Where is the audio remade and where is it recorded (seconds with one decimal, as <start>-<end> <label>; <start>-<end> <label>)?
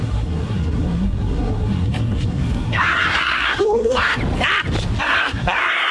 0.0-4.2 remade; 4.2-5.0 recorded; 5.0-5.9 remade